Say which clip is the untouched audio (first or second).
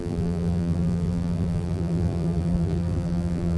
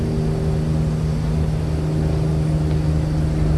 second